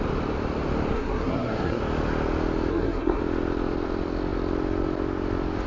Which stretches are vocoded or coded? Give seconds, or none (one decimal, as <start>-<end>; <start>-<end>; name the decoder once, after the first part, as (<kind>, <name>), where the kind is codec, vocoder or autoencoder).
0.9-1.8 (codec, SNAC); 2.7-3.2